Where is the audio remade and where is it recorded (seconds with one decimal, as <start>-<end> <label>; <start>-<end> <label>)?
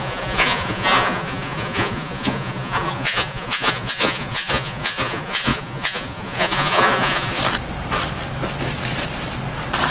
0.0-7.4 remade; 7.4-9.9 recorded